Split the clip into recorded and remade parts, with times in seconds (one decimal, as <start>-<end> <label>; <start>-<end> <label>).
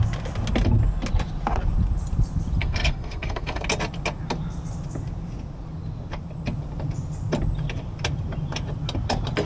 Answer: 0.0-2.6 recorded; 2.6-3.6 remade; 3.6-9.5 recorded